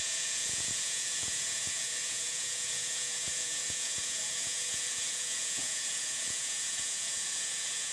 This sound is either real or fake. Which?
fake